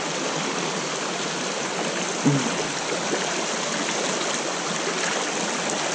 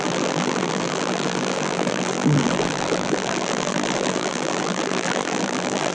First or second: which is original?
first